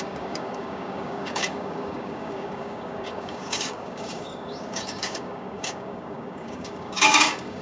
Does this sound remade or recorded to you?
remade